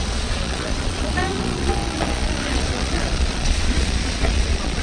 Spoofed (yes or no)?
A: yes